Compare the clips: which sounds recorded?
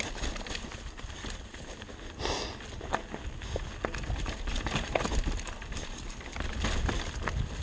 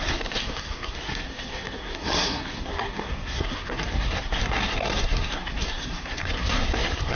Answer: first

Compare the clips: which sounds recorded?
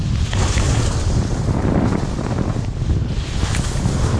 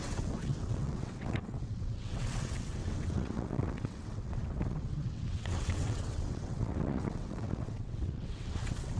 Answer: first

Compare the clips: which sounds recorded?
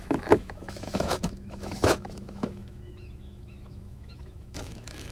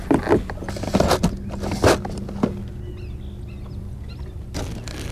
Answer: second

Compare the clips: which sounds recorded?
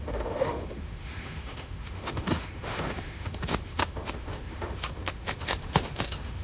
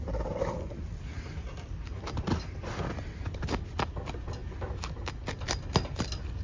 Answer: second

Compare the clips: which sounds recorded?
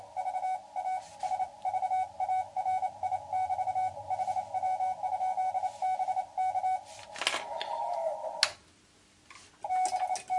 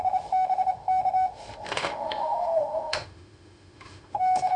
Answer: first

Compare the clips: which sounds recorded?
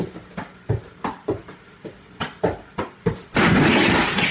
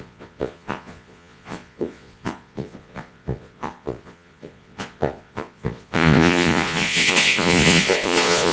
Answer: first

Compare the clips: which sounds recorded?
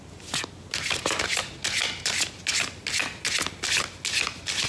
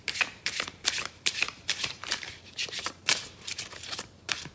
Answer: first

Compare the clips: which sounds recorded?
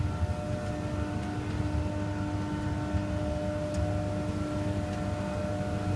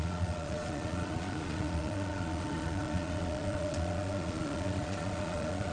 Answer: first